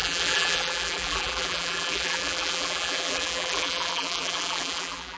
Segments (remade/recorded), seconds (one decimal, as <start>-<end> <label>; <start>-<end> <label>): 0.0-5.2 remade